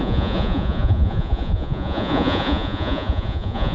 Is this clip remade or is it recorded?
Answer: remade